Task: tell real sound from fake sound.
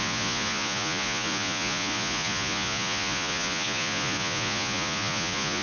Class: fake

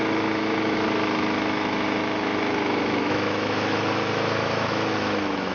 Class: fake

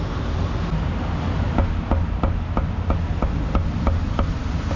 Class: fake